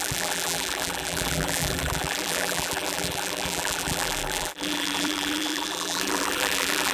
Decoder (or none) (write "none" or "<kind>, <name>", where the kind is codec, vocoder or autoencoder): vocoder, BigVGAN v2